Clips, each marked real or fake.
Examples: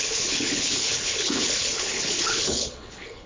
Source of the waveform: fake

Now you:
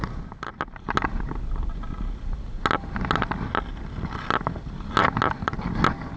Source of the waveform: real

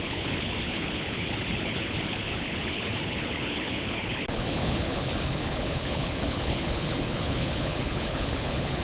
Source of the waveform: fake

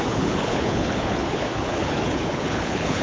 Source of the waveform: fake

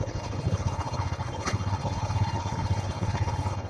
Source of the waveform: fake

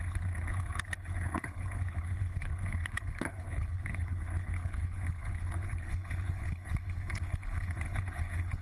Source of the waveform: fake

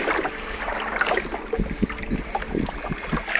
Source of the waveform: real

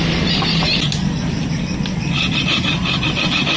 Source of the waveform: real